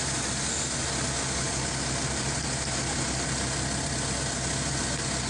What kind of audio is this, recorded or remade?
recorded